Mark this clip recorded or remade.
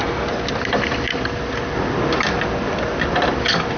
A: recorded